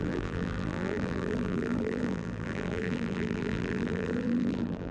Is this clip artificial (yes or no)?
yes